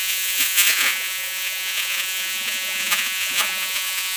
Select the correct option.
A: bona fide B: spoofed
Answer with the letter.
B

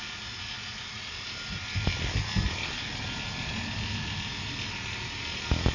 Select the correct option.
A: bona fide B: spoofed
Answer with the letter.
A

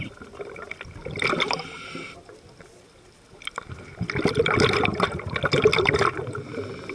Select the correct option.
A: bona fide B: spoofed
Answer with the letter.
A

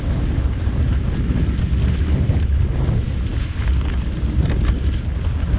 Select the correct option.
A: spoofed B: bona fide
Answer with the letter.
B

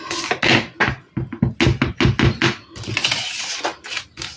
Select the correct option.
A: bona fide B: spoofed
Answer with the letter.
A